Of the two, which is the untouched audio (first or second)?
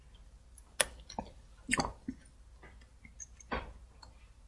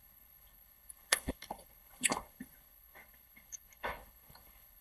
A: first